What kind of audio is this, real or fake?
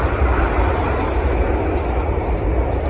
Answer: real